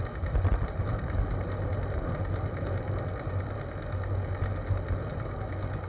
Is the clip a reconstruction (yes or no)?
no